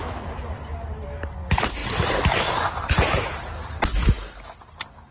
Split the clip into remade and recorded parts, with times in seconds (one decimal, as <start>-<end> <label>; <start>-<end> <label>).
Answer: 0.0-5.1 recorded